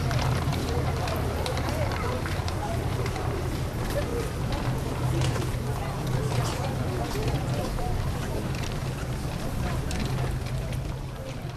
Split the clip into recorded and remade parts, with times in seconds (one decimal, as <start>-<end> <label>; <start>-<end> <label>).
0.0-4.1 remade; 4.1-7.6 recorded; 7.6-8.8 remade; 8.8-10.8 recorded; 10.8-11.6 remade